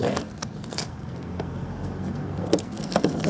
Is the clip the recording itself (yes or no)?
no